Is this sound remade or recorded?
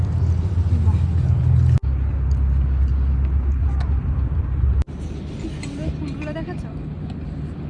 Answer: recorded